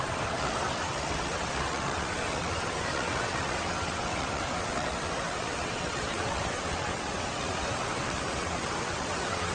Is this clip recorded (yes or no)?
no